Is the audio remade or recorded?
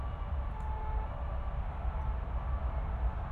recorded